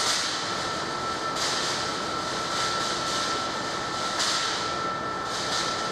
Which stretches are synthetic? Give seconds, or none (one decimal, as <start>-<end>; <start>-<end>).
none